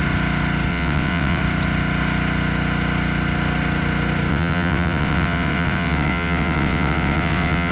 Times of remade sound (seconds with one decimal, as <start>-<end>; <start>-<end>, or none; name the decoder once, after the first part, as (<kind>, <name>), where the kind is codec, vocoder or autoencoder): 0.7-1.4 (vocoder, WaveNeXt); 4.3-7.7